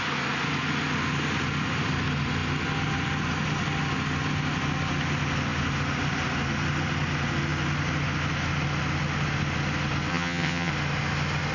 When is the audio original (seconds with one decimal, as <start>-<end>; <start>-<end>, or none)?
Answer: 0.0-10.1; 10.7-11.5